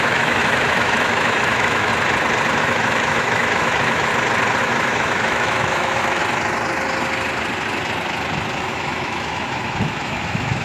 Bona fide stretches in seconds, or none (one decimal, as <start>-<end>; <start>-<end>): 1.9-2.6; 4.1-4.6; 6.2-8.6